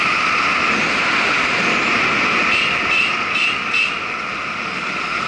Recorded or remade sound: recorded